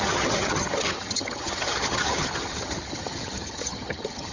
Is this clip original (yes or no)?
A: no